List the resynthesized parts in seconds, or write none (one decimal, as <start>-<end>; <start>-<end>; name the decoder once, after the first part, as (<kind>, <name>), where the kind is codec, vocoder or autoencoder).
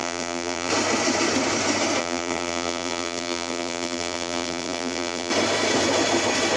0.0-0.7 (vocoder, BigVGAN v2); 2.0-5.3